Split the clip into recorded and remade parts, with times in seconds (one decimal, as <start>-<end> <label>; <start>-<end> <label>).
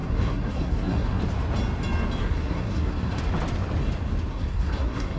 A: 0.0-1.2 remade; 1.2-2.2 recorded; 2.2-3.2 remade; 3.2-4.3 recorded; 4.3-5.2 remade